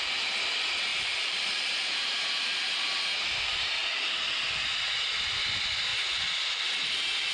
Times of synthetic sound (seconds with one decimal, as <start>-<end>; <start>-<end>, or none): 0.9-2.7